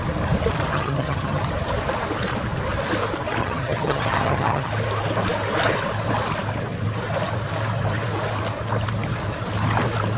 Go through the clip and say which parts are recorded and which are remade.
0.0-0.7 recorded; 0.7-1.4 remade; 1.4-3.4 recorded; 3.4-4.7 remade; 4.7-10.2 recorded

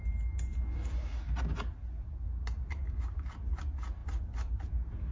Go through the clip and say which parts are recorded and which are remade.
0.0-5.1 recorded

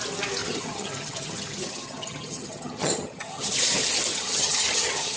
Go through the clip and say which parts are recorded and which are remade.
0.0-0.4 recorded; 0.4-3.5 remade; 3.5-4.1 recorded; 4.1-5.2 remade